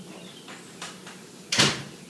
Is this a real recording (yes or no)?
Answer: yes